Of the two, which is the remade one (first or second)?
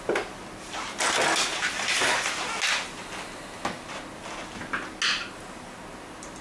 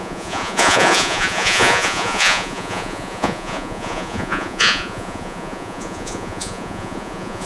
second